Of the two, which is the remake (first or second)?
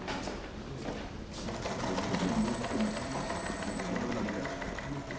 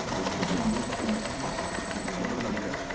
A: second